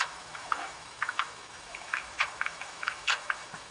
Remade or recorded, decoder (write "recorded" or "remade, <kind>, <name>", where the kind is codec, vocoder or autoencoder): remade, autoencoder, DAC-VAE